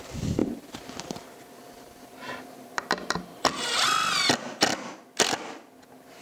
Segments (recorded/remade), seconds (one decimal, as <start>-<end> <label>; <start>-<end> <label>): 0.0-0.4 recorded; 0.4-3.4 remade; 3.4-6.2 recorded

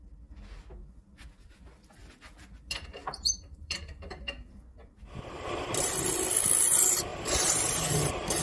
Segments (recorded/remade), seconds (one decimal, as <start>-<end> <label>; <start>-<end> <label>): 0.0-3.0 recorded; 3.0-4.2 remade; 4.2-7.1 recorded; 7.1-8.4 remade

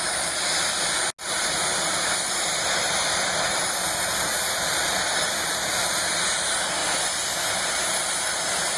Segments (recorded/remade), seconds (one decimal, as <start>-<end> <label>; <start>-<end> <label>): 0.0-1.7 recorded; 1.7-6.2 remade; 6.2-8.8 recorded